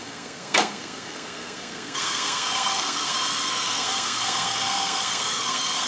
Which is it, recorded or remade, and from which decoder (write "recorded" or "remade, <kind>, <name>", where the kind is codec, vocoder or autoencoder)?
remade, codec, SNAC